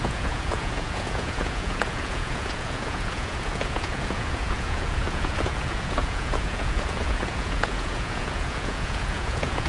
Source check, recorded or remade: remade